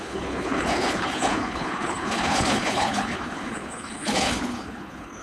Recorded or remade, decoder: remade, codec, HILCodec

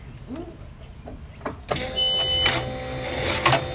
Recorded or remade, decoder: recorded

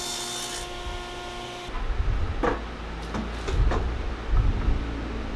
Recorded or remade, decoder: recorded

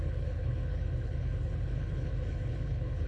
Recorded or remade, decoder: remade, codec, HILCodec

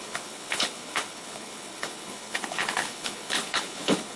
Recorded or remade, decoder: remade, codec, HILCodec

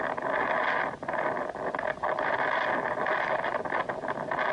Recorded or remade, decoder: recorded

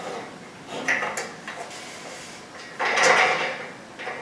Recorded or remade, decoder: recorded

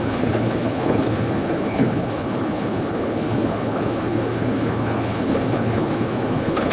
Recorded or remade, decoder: remade, codec, HILCodec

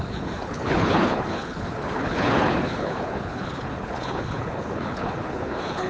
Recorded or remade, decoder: remade, codec, HILCodec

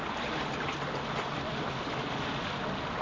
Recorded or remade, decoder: recorded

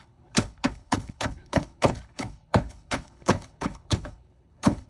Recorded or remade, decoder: remade, codec, HILCodec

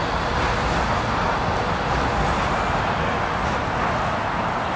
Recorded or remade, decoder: recorded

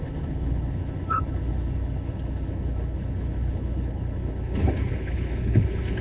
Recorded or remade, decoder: remade, codec, HILCodec